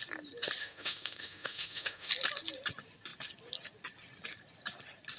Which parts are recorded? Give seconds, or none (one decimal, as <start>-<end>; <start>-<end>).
0.0-0.6; 2.1-5.2